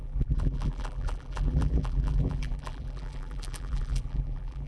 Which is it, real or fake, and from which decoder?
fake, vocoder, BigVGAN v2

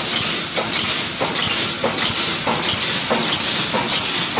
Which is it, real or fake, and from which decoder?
real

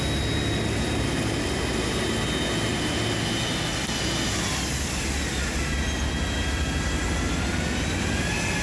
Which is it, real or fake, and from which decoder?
real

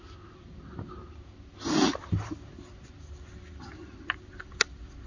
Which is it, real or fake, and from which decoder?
real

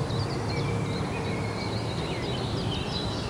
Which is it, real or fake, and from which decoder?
real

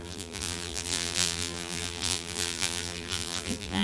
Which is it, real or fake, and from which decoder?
fake, vocoder, BigVGAN v2